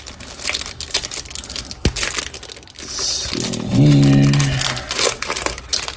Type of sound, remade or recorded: recorded